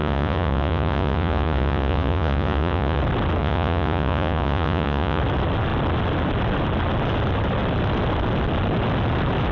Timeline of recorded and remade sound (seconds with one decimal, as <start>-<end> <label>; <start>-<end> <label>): 0.0-3.0 remade; 3.0-3.4 recorded; 3.4-5.2 remade; 5.2-9.5 recorded